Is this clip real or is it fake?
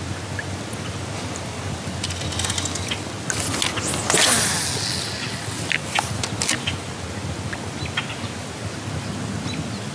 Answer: real